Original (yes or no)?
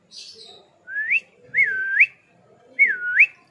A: yes